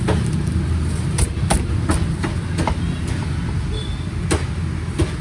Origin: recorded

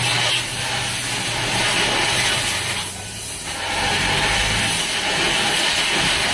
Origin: recorded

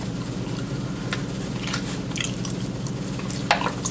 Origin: recorded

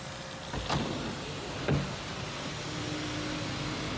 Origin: recorded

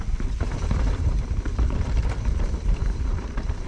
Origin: remade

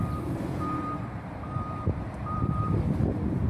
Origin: remade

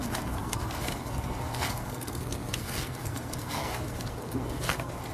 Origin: remade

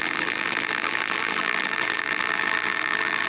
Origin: remade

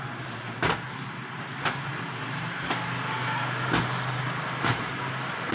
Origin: recorded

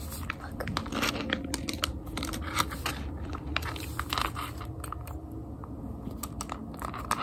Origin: recorded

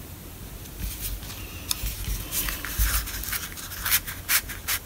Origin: recorded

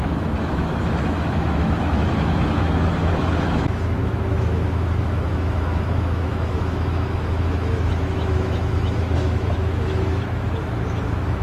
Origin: remade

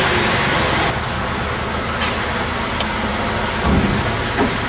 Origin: recorded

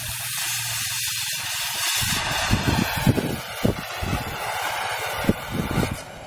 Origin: recorded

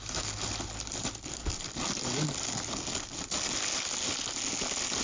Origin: recorded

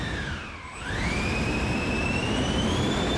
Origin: remade